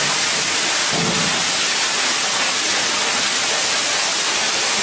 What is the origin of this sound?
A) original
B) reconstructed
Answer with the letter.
A